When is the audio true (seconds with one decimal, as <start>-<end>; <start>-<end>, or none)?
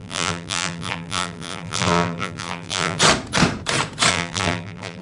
3.0-4.1